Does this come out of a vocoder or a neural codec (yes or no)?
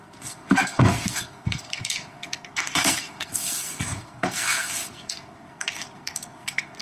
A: yes